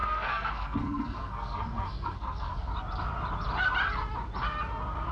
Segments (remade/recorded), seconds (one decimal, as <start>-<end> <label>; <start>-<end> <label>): 0.0-2.7 remade; 2.7-5.1 recorded